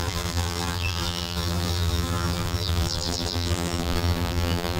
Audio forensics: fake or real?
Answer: fake